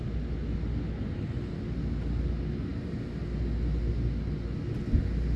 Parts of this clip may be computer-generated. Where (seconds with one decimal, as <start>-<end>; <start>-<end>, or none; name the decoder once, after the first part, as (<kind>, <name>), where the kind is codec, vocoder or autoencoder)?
none